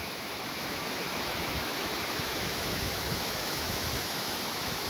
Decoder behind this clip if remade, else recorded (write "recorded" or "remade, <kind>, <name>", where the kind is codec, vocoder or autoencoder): remade, autoencoder, DAC-VAE